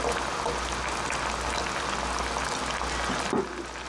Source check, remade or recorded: recorded